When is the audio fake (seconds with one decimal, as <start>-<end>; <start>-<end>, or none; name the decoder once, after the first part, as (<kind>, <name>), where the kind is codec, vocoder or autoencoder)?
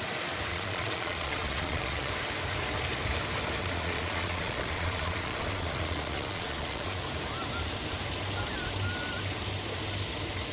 0.5-2.1 (vocoder, Vocos); 3.6-7.0